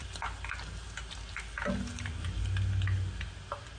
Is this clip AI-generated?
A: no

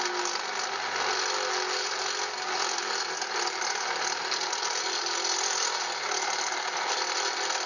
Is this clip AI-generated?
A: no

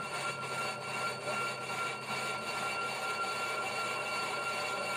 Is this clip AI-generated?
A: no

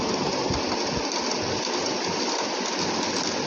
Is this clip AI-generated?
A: no